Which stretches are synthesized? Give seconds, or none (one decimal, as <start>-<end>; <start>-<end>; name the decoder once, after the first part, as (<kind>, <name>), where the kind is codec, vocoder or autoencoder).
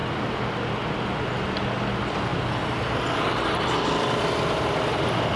none